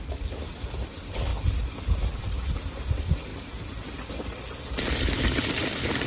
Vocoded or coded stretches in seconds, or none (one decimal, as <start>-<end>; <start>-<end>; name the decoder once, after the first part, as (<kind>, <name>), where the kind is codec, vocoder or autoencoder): none